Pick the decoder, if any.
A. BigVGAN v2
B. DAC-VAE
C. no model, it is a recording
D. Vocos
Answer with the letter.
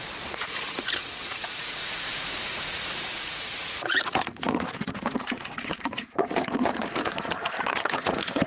D